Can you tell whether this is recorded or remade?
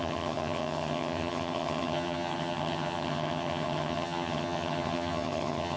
remade